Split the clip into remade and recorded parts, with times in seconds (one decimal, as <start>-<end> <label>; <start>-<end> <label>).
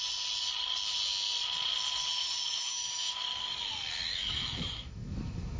0.0-2.1 recorded; 2.1-3.4 remade; 3.4-4.1 recorded; 4.1-5.6 remade